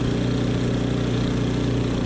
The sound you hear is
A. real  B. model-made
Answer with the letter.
A